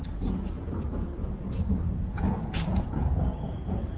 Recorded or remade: remade